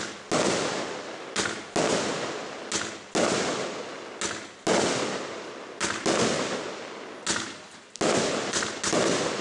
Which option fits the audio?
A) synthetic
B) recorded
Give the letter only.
B